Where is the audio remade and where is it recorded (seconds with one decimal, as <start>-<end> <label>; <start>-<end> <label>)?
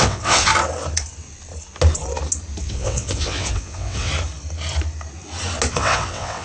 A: 0.0-0.5 remade; 0.5-2.6 recorded; 2.6-4.1 remade; 4.1-5.7 recorded; 5.7-6.4 remade